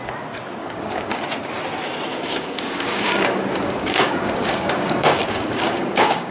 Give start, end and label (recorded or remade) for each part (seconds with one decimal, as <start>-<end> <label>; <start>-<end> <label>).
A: 0.0-0.6 recorded; 0.6-1.2 remade; 1.2-2.1 recorded; 2.1-6.3 remade